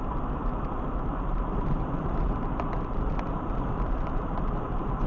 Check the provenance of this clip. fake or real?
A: fake